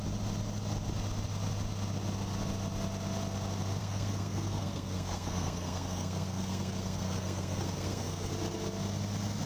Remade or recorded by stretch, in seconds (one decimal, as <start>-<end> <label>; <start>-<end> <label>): 0.0-3.8 recorded; 3.8-8.3 remade; 8.3-9.5 recorded